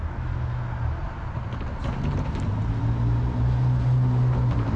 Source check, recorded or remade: recorded